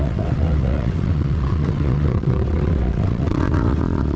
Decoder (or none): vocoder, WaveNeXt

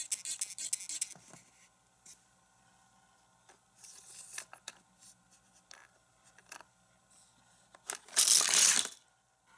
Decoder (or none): none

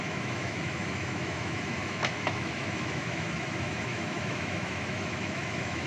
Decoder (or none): autoencoder, DAC-VAE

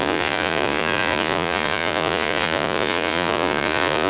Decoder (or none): vocoder, Vocos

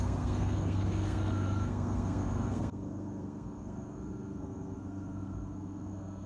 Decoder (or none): codec, SNAC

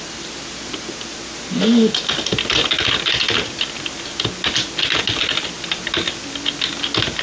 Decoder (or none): none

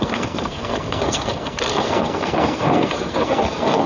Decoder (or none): codec, SNAC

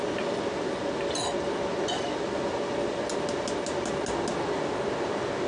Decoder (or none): none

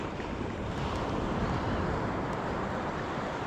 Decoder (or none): vocoder, BigVGAN v2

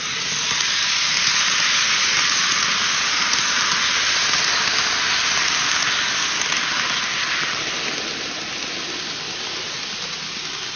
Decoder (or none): none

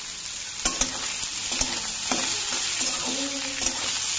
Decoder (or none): none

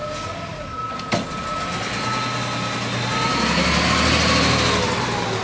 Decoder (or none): none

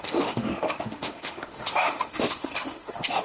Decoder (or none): autoencoder, DAC-VAE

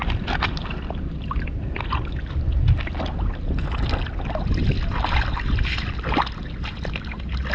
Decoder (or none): none